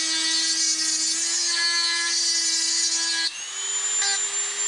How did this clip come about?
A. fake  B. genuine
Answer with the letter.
B